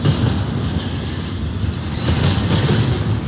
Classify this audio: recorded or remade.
recorded